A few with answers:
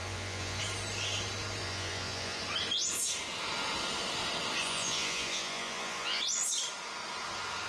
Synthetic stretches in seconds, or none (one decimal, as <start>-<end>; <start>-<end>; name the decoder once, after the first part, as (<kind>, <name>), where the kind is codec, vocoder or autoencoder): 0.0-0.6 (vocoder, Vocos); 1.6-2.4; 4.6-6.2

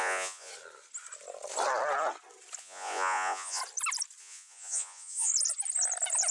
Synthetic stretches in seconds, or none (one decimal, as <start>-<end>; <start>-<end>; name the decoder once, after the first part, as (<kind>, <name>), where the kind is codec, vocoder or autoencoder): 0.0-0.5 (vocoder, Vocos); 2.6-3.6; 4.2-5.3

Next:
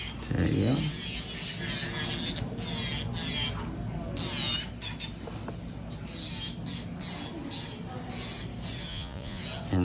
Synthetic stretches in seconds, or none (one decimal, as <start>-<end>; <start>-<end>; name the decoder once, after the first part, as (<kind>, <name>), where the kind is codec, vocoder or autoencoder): 8.9-9.4 (vocoder, Vocos)

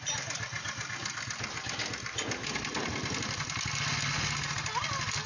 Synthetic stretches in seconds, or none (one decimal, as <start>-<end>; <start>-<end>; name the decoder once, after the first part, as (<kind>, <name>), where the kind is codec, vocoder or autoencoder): none